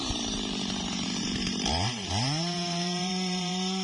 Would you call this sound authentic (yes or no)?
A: no